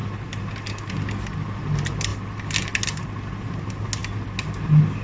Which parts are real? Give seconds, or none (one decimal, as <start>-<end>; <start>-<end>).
0.0-5.0